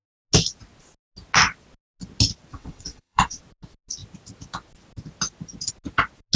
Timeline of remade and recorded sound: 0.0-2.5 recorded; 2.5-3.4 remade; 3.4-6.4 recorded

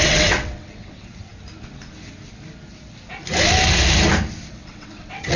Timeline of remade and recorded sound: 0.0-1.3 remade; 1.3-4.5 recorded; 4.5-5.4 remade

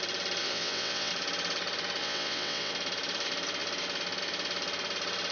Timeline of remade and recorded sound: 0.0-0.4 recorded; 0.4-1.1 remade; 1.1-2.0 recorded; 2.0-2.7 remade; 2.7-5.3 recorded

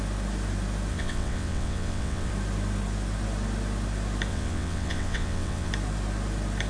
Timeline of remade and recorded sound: 0.0-0.9 recorded; 0.9-2.3 remade; 2.3-4.3 recorded; 4.3-5.7 remade; 5.7-6.7 recorded